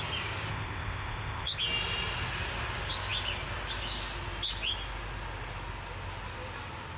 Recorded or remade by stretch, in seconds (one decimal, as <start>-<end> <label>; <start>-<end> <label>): 0.0-0.5 recorded; 0.5-1.6 remade; 1.6-7.0 recorded